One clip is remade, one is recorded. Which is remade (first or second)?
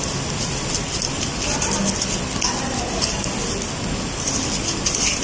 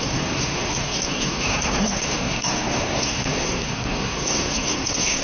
second